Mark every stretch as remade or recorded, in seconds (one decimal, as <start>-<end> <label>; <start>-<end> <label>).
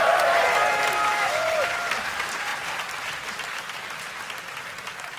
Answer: 0.0-1.1 recorded; 1.1-1.7 remade; 1.7-5.2 recorded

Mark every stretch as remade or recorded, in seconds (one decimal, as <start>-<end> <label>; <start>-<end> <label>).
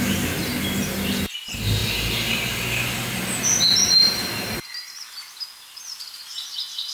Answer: 0.0-6.9 recorded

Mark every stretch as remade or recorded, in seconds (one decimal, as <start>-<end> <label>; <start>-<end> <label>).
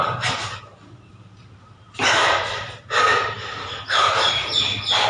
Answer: 0.0-1.1 recorded; 1.1-4.2 remade; 4.2-5.1 recorded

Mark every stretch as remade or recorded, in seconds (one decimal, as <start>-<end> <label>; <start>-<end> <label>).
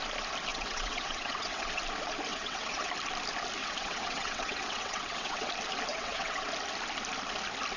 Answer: 0.0-0.5 recorded; 0.5-1.8 remade; 1.8-2.3 recorded; 2.3-2.9 remade; 2.9-3.6 recorded; 3.6-5.5 remade; 5.5-5.9 recorded; 5.9-6.5 remade; 6.5-7.8 recorded